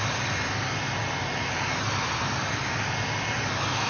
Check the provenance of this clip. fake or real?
real